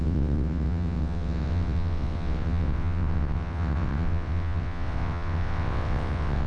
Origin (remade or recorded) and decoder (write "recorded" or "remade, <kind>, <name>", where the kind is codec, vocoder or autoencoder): remade, vocoder, WaveNeXt